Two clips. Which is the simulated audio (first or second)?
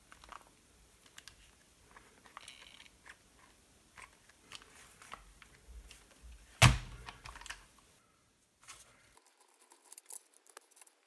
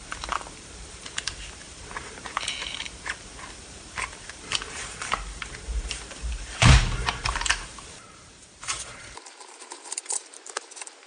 second